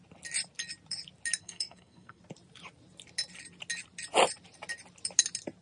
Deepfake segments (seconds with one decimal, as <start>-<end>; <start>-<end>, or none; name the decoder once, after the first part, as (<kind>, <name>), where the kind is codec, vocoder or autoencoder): 1.4-2.2 (codec, SNAC)